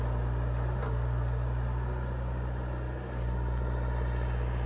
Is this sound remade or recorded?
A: recorded